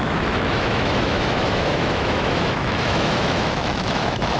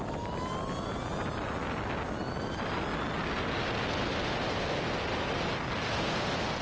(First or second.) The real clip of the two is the second